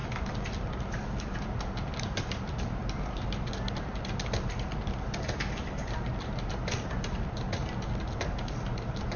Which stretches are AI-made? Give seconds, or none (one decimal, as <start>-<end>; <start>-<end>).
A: 2.0-2.8; 6.2-7.6; 8.2-9.2